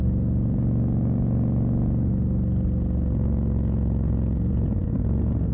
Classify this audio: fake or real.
real